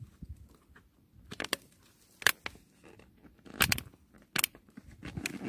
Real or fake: real